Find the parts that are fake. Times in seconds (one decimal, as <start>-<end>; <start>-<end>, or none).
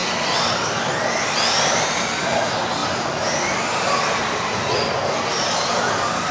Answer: none